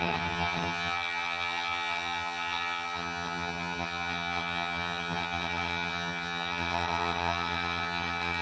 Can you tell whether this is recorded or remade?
remade